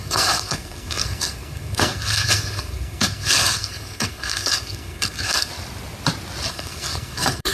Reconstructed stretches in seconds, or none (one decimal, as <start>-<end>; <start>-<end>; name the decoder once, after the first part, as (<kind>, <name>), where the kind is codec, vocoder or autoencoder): 0.0-5.5 (codec, SNAC); 6.5-7.5